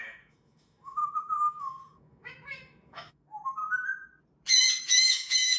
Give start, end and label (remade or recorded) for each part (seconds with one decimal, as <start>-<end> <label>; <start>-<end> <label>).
0.0-3.6 remade; 3.6-4.8 recorded; 4.8-5.6 remade